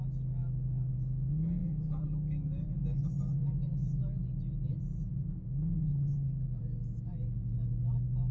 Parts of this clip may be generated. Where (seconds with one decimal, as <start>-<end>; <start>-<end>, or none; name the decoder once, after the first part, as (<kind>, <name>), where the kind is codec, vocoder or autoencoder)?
none

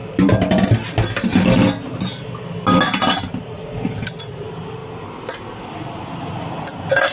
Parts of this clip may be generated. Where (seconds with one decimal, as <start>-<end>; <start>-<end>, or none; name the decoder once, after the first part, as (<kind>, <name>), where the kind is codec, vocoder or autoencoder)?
none

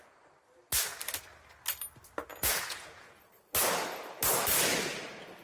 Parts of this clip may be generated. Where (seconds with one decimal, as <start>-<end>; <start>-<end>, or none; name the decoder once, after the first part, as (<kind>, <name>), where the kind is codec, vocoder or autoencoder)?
2.3-3.3 (vocoder, Vocos)

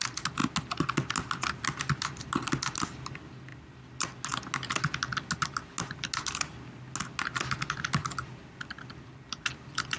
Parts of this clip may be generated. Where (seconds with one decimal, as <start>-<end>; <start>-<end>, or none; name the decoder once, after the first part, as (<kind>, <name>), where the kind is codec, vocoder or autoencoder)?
none

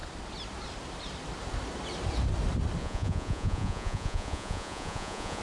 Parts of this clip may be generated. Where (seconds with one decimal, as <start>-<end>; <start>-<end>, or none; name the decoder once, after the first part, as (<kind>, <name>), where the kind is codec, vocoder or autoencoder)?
2.8-5.4 (vocoder, Vocos)

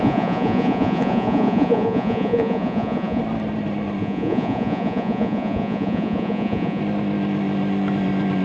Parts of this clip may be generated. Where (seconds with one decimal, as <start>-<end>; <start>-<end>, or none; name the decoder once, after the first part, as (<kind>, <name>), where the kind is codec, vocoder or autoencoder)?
0.0-3.2 (vocoder, Vocos); 4.0-6.8

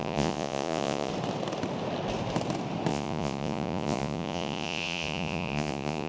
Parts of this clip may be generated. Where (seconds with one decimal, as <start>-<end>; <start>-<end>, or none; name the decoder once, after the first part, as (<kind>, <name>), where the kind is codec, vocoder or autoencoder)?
0.0-1.1 (vocoder, Vocos); 2.9-6.1

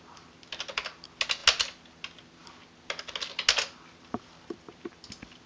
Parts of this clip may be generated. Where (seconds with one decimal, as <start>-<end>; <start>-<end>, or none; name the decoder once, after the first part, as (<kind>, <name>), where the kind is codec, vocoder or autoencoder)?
none